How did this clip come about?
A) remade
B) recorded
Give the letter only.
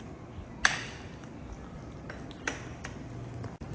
B